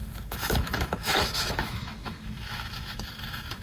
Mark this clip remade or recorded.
remade